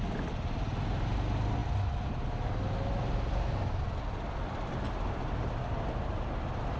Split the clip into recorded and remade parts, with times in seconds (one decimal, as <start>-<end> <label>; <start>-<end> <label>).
0.0-6.8 recorded